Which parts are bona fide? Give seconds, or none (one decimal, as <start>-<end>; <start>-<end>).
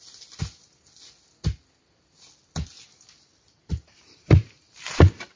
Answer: 0.0-3.3; 4.5-5.4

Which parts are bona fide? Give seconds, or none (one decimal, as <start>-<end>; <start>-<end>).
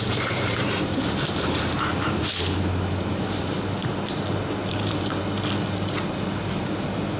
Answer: 2.3-3.1; 3.8-4.7; 5.2-6.1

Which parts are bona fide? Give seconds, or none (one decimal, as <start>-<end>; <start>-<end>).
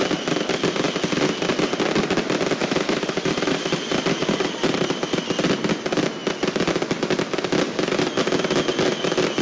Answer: 0.0-2.6; 5.1-9.4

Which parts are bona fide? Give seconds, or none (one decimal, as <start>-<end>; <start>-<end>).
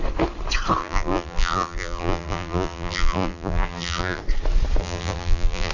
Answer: 0.0-0.8; 4.2-4.8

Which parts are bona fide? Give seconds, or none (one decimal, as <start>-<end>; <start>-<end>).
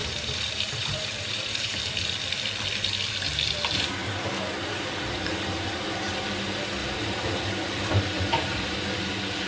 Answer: 1.8-4.0; 6.1-6.8; 9.0-9.5